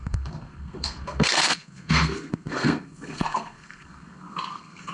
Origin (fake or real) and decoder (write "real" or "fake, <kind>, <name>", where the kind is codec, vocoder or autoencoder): fake, codec, SNAC